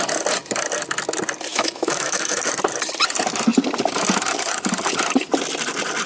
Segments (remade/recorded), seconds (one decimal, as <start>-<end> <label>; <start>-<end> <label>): 0.0-1.5 recorded; 1.5-2.4 remade; 2.4-6.1 recorded